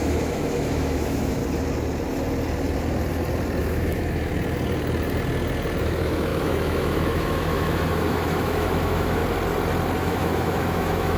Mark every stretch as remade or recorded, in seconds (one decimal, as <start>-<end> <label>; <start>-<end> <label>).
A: 0.0-1.4 remade; 1.4-3.6 recorded; 3.6-4.3 remade; 4.3-5.8 recorded; 5.8-9.2 remade; 9.2-10.0 recorded; 10.0-11.2 remade